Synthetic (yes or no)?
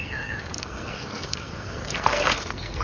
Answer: yes